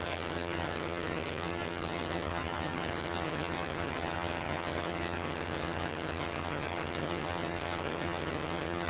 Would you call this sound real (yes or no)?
no